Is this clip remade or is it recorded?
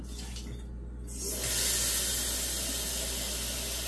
recorded